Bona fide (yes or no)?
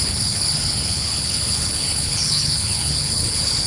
no